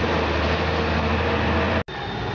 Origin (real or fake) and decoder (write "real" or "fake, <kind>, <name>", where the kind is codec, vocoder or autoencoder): real